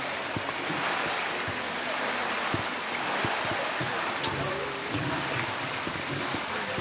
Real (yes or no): yes